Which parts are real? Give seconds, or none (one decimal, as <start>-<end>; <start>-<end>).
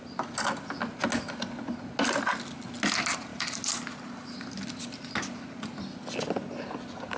0.0-7.2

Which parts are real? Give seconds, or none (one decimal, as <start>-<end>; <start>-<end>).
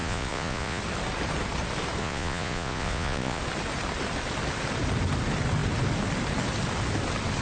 0.8-2.0; 3.4-7.4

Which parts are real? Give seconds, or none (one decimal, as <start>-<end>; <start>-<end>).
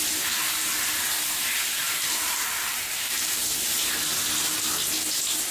0.0-1.8; 3.9-5.5